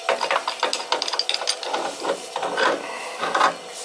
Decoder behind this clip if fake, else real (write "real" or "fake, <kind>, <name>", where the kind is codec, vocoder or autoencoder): real